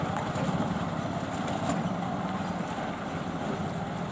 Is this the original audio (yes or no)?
yes